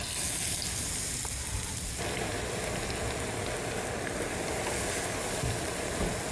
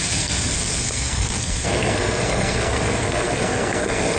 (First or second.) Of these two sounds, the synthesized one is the second